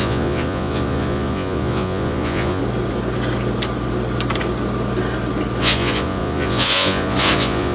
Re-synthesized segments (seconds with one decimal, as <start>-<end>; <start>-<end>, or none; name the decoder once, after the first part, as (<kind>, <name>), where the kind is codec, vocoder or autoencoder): 0.0-2.6 (vocoder, Vocos); 5.6-7.7